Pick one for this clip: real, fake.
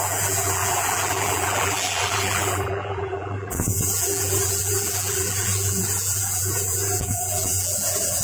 fake